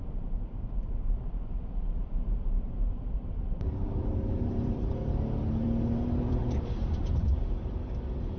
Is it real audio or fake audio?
fake